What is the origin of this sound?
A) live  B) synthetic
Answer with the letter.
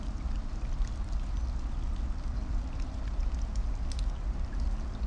A